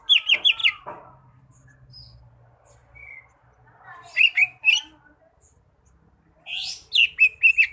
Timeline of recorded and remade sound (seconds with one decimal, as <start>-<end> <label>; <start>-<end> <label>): 0.0-7.7 recorded